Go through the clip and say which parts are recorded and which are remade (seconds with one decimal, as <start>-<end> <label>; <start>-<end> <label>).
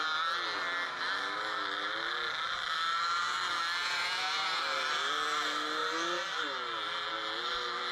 0.0-3.8 recorded; 3.8-4.6 remade; 4.6-7.9 recorded